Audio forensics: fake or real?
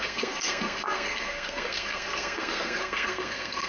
fake